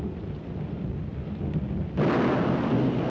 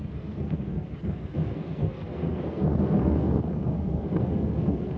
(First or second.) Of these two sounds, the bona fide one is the first